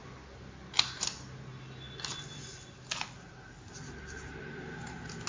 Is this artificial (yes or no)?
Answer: no